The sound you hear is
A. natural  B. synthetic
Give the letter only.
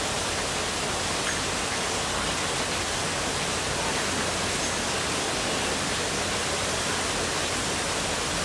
A